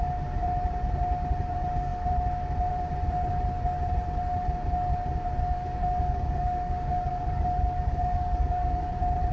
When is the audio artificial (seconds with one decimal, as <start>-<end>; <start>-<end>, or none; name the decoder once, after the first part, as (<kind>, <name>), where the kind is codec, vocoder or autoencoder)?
5.4-8.9 (codec, DAC)